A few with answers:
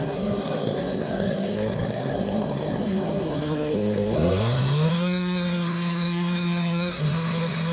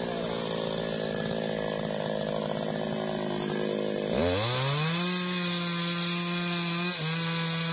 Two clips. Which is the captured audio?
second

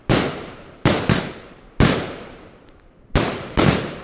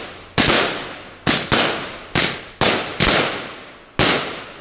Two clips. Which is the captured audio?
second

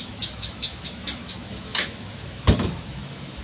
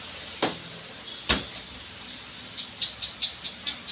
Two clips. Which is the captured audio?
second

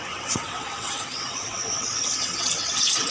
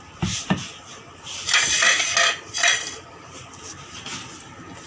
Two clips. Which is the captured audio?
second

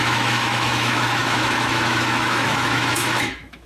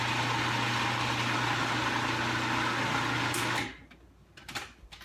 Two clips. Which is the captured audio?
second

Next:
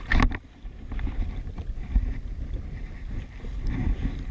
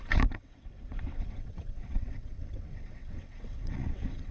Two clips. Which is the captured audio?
first